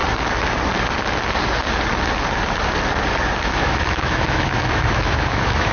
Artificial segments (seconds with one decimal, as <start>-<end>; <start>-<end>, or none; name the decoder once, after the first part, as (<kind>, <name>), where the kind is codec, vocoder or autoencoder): 3.4-5.7 (autoencoder, DAC-VAE)